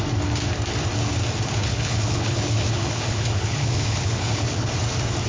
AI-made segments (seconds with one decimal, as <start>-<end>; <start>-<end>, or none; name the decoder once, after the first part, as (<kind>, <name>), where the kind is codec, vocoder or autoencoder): 1.5-4.7 (codec, HILCodec)